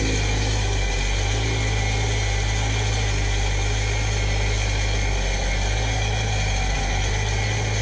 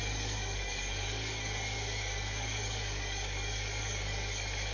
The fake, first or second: second